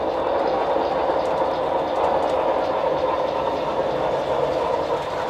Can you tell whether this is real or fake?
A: real